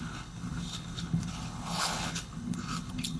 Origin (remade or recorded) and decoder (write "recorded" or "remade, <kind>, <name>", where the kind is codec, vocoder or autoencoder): remade, codec, HILCodec